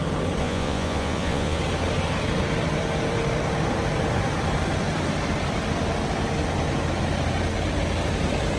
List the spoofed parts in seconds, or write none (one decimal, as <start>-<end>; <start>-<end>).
0.4-1.6